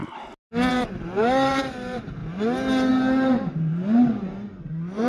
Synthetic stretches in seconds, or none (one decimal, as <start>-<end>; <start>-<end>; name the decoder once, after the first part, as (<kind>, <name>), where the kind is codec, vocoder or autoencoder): 0.7-2.2 (vocoder, BigVGAN v2); 2.9-5.1